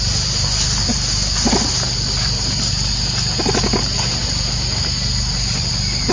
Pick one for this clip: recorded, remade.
recorded